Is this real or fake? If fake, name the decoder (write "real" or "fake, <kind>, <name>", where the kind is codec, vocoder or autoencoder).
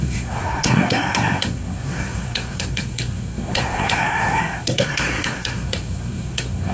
fake, codec, SNAC